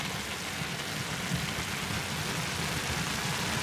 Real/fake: real